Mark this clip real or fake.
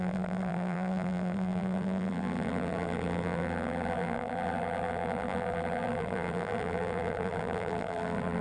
fake